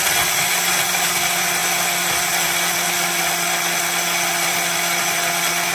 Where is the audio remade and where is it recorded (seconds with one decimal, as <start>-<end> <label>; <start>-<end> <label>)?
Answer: 0.0-5.7 recorded

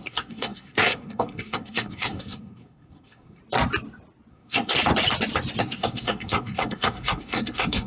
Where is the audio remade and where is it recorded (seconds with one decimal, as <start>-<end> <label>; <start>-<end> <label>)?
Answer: 0.0-3.4 remade; 3.4-4.3 recorded; 4.3-4.7 remade; 4.7-5.6 recorded; 5.6-7.9 remade